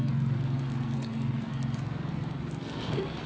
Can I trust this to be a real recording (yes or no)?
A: no